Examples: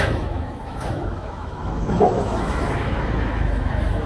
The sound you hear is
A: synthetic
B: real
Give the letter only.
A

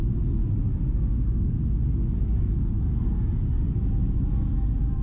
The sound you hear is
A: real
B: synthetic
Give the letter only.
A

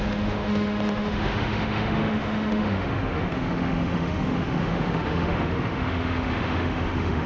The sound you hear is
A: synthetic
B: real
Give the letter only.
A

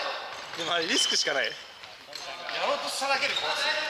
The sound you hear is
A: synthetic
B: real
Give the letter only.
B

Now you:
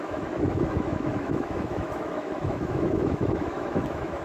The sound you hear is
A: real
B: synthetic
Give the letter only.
B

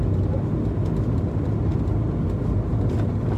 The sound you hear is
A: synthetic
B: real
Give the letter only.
B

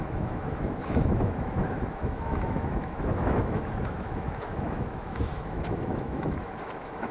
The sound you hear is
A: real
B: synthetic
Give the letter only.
B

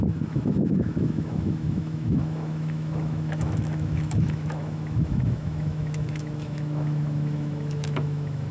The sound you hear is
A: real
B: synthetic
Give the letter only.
B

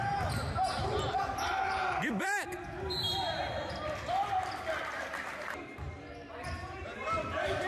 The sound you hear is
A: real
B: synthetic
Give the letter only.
A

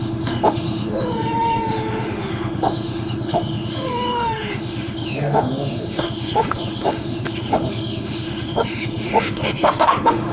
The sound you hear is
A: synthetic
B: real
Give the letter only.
A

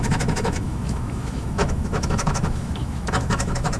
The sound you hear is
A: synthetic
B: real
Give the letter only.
A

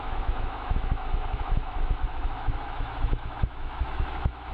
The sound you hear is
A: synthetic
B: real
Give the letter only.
A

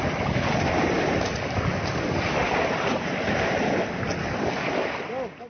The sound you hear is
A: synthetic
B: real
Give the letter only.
B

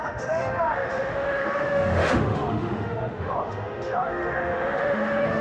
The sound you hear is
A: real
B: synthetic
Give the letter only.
B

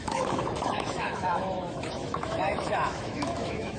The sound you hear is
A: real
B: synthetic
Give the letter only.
B